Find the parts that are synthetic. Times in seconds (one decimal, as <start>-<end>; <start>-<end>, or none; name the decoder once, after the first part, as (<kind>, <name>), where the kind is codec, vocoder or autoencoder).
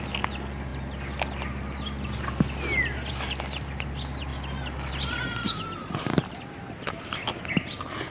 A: none